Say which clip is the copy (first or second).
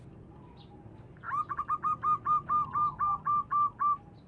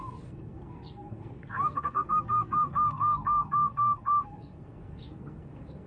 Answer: second